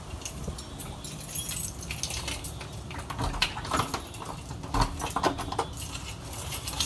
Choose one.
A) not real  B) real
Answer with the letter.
B